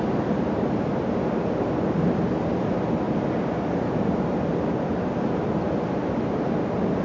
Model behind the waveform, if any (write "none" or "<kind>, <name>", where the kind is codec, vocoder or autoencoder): none